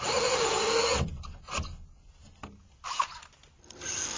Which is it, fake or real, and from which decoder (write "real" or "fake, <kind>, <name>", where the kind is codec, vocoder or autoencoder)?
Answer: real